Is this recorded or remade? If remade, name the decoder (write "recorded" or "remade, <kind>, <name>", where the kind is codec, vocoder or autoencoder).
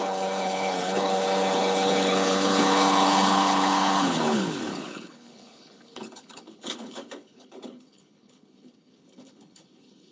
remade, codec, HILCodec